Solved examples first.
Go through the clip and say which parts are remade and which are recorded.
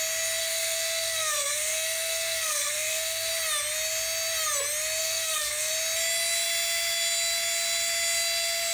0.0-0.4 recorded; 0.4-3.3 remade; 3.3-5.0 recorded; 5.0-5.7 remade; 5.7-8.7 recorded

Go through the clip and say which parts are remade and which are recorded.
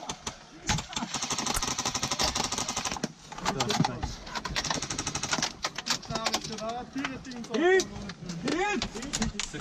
0.0-8.5 recorded; 8.5-9.2 remade; 9.2-9.6 recorded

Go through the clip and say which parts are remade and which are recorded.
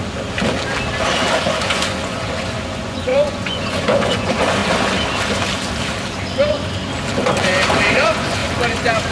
0.0-1.4 recorded; 1.4-4.6 remade; 4.6-7.4 recorded; 7.4-8.4 remade; 8.4-9.1 recorded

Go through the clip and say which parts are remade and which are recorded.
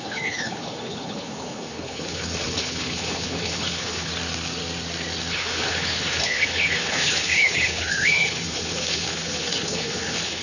0.0-4.1 remade; 4.1-5.3 recorded; 5.3-10.4 remade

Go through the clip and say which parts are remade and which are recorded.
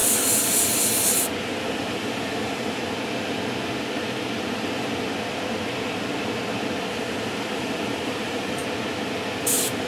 0.0-1.4 recorded; 1.4-2.8 remade; 2.8-6.9 recorded; 6.9-8.6 remade; 8.6-9.4 recorded; 9.4-9.9 remade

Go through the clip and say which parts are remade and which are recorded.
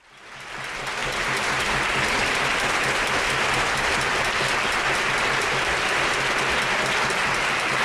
0.0-2.2 recorded; 2.2-4.1 remade; 4.1-7.8 recorded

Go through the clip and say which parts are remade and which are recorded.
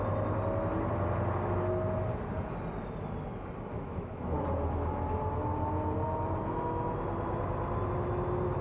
0.0-3.7 recorded; 3.7-4.4 remade; 4.4-8.6 recorded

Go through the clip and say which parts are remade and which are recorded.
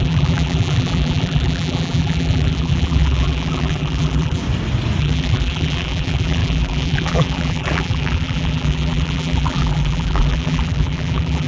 0.0-4.4 remade; 4.4-5.0 recorded; 5.0-11.5 remade